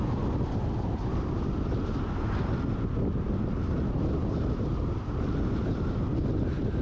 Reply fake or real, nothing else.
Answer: real